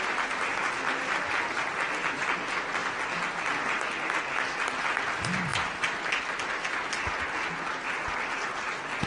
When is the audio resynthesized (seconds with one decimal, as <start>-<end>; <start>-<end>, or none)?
none